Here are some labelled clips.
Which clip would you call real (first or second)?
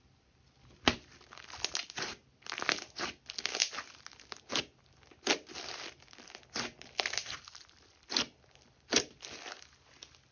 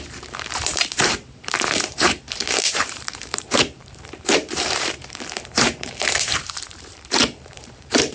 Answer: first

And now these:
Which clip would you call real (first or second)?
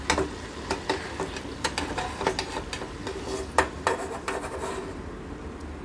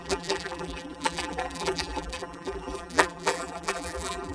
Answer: first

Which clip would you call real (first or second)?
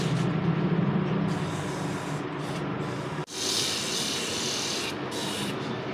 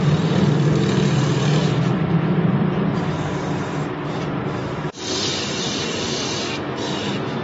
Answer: first